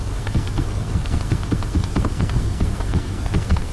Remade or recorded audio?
remade